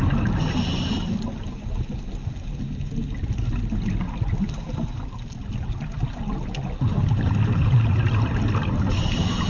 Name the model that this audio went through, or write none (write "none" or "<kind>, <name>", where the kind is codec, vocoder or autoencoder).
none